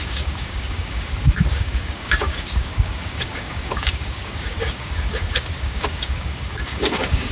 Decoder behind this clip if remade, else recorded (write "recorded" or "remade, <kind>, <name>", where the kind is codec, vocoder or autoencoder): remade, codec, DAC